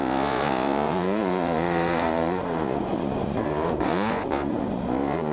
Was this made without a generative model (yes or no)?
no